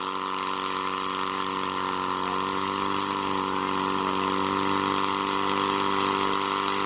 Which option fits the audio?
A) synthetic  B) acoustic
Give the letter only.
B